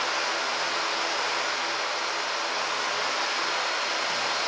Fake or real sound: real